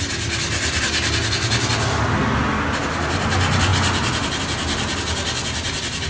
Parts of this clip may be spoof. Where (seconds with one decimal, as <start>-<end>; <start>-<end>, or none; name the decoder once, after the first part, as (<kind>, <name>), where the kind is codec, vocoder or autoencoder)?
none